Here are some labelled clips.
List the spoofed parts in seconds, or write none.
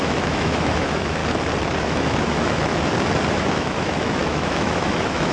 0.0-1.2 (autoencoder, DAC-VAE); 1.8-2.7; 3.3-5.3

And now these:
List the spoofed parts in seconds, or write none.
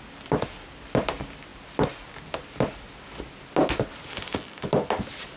none